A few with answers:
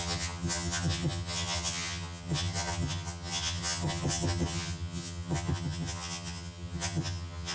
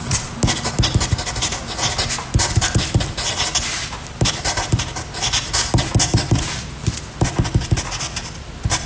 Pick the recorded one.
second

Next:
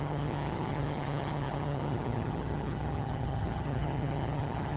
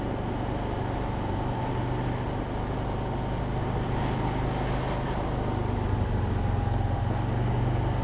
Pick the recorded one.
second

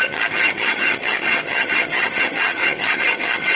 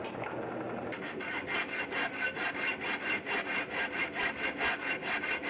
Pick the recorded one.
second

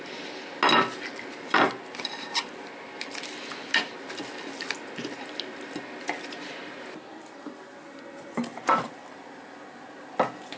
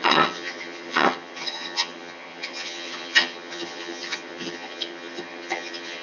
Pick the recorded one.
first